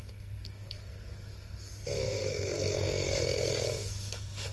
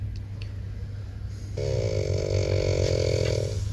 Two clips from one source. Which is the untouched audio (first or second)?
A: second